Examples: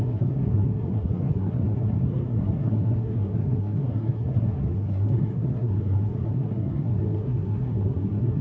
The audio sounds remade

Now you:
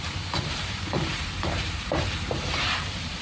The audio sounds remade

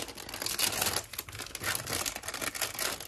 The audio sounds recorded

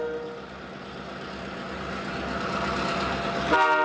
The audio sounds recorded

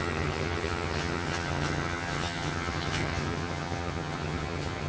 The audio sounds remade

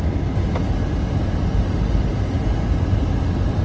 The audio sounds recorded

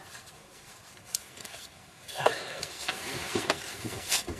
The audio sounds remade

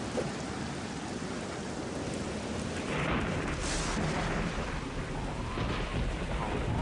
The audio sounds recorded